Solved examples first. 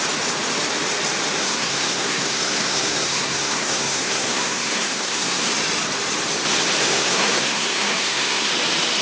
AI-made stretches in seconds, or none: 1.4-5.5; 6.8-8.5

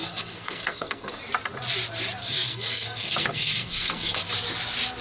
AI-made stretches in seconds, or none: 0.0-1.1; 2.2-4.3

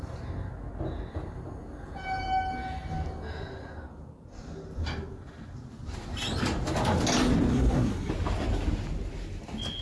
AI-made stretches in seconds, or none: 7.5-8.1

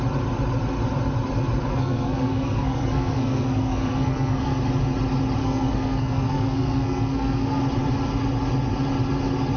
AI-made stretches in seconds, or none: 1.7-4.6; 5.4-7.6

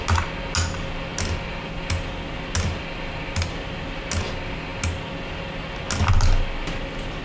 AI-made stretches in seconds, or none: none

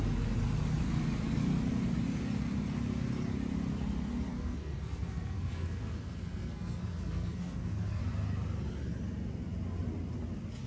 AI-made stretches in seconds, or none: 4.3-8.0

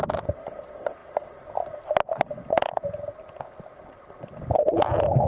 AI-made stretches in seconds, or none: none

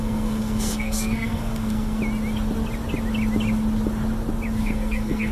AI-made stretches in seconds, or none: 0.0-2.0; 4.6-5.3